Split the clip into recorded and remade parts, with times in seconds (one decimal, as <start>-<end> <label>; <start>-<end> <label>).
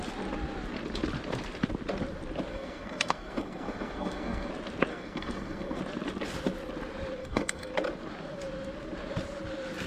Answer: 0.0-2.5 recorded; 2.5-4.5 remade; 4.5-4.9 recorded; 4.9-5.8 remade; 5.8-7.2 recorded; 7.2-7.7 remade; 7.7-9.9 recorded